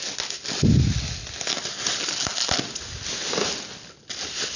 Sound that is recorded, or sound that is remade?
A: recorded